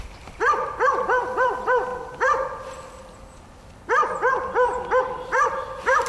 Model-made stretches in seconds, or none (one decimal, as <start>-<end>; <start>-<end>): 0.0-1.9; 5.0-6.1